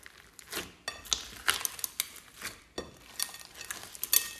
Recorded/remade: recorded